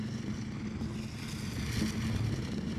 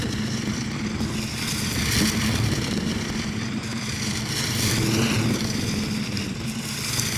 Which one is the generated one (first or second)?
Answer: second